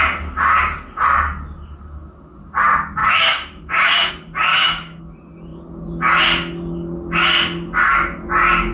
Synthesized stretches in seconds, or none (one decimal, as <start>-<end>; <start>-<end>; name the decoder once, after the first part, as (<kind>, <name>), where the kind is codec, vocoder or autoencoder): 3.0-4.1 (autoencoder, DAC-VAE); 4.5-5.0